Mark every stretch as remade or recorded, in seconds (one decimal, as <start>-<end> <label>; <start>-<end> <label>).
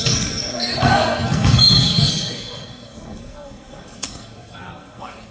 0.0-5.3 remade